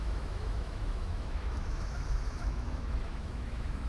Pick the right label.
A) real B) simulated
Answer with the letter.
B